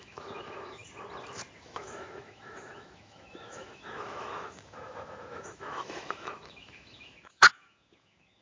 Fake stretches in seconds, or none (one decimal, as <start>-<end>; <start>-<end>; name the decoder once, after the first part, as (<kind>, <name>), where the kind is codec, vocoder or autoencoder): 0.0-0.8 (autoencoder, DAC-VAE); 1.6-8.4